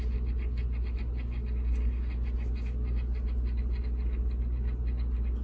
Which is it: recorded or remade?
recorded